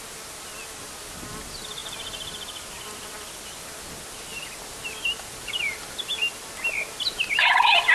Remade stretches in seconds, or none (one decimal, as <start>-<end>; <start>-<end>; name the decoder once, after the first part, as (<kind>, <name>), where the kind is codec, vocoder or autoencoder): none